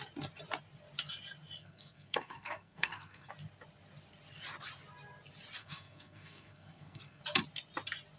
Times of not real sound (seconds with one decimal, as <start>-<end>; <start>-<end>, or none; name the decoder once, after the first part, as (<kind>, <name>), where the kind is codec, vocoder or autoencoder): 1.6-3.3 (codec, SNAC); 5.6-7.2